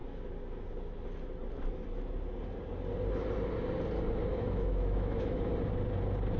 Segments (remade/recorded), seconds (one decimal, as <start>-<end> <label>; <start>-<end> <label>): 0.0-4.3 recorded; 4.3-5.5 remade; 5.5-6.4 recorded